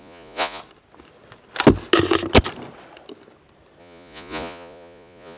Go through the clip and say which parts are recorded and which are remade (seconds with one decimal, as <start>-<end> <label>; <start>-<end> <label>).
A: 0.0-0.6 remade; 0.6-3.8 recorded; 3.8-5.4 remade